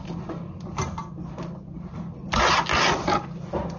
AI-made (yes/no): no